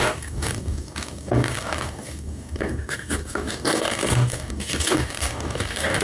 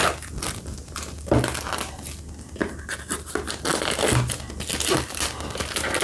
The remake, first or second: first